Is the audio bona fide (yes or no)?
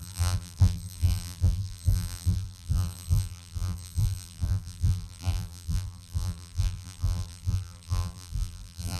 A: no